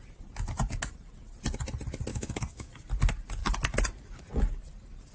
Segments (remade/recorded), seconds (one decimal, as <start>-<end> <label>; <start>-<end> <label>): 0.0-2.1 recorded; 2.1-2.7 remade; 2.7-5.1 recorded